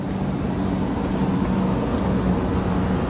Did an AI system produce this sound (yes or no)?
no